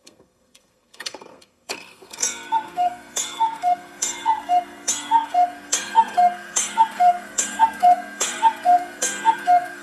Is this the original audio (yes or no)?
no